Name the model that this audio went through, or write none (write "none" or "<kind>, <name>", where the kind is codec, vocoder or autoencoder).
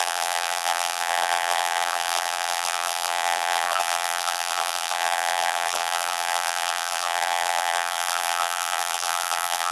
vocoder, BigVGAN v2